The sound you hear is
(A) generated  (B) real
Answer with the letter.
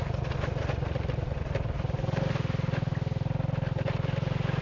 B